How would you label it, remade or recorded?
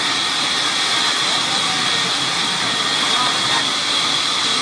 recorded